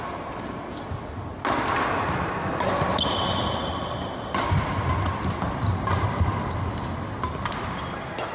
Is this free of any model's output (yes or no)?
yes